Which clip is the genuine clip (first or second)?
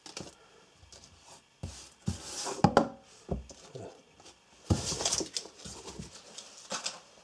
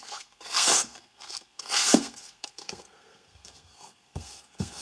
first